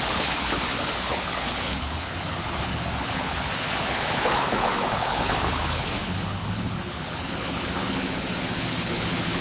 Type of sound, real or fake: fake